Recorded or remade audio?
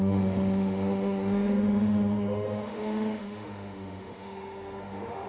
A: remade